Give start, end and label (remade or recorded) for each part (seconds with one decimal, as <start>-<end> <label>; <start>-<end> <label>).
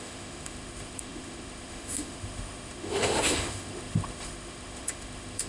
0.0-5.5 remade